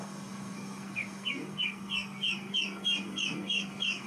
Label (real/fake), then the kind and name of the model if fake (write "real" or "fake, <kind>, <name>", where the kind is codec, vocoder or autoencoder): fake, codec, SNAC